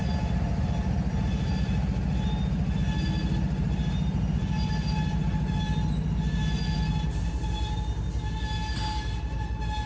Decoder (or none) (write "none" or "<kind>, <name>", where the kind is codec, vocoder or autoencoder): none